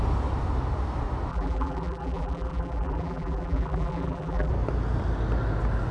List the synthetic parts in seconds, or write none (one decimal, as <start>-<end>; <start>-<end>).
1.3-4.5

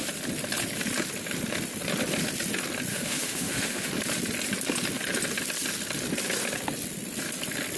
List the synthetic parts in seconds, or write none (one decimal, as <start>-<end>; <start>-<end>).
2.9-3.9

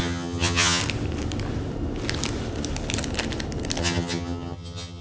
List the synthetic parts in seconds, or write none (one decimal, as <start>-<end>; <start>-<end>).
0.0-0.8; 3.8-5.0

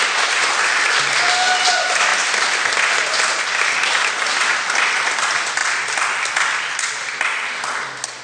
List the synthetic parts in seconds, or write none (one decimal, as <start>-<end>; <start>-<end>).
none

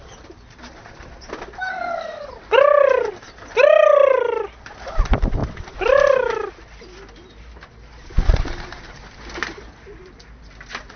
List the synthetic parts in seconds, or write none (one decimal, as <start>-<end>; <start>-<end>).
1.7-2.3

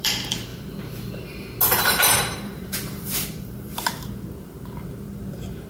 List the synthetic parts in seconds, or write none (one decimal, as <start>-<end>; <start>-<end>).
0.0-0.5; 1.8-5.7

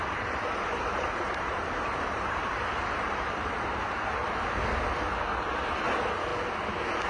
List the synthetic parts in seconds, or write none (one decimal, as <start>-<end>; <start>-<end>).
0.0-4.2; 5.8-6.3

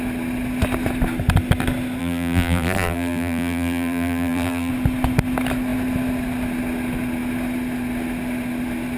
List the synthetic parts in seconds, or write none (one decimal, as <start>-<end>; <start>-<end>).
2.0-4.7